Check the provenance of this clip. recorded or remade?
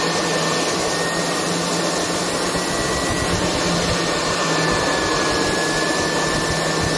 recorded